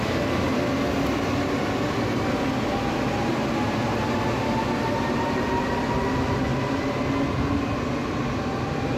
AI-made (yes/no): no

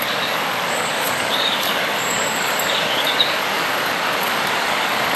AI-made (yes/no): yes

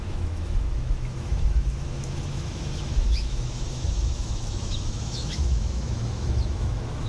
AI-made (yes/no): yes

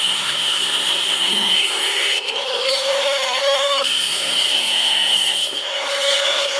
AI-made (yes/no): yes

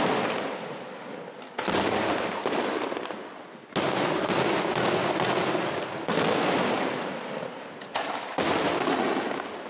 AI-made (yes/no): no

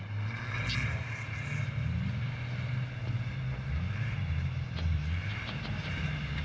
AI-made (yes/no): no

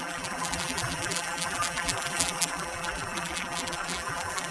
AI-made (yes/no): yes